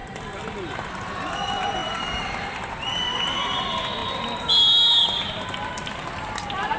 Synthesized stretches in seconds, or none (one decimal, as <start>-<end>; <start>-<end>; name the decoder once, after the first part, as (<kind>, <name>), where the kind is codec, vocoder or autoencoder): 0.0-0.9 (vocoder, BigVGAN v2)